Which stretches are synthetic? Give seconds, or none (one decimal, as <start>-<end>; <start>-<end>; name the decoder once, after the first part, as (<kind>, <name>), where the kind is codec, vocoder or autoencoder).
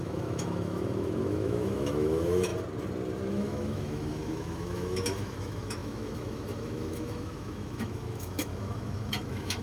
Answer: 0.0-2.5 (autoencoder, DAC-VAE); 3.3-9.6